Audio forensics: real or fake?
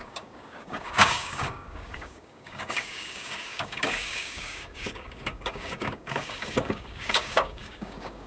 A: fake